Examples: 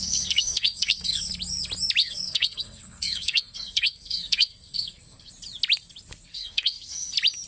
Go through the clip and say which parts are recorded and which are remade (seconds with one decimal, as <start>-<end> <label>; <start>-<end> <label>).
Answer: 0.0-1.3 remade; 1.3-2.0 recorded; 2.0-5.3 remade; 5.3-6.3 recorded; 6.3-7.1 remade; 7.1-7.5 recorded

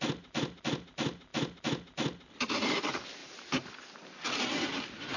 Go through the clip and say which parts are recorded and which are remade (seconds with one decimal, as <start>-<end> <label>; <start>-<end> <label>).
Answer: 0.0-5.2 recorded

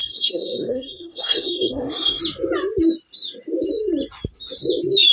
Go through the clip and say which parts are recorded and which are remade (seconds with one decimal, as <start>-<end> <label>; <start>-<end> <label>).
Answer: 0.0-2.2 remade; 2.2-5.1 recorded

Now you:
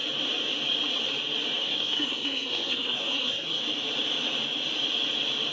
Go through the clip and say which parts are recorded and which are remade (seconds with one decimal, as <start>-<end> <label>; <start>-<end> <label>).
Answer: 0.0-1.6 recorded; 1.6-3.6 remade; 3.6-5.5 recorded

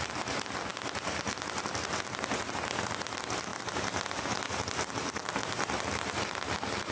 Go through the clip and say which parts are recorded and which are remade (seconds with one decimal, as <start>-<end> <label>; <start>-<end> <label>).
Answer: 0.0-6.9 recorded